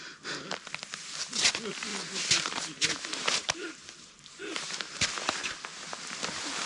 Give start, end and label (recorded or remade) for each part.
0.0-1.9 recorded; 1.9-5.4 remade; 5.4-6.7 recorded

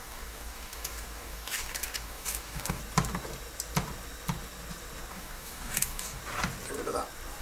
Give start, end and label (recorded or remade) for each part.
0.0-2.8 remade; 2.8-5.1 recorded; 5.1-6.2 remade; 6.2-7.4 recorded